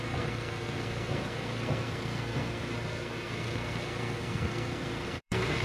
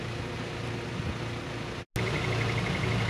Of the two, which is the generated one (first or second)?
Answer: first